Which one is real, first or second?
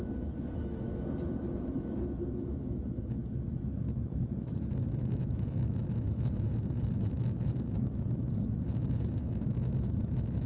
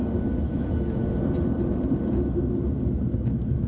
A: second